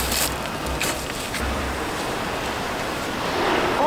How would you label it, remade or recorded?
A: remade